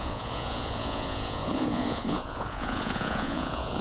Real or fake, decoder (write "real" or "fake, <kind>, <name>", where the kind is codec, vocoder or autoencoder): fake, vocoder, Vocos